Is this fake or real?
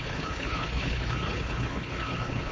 fake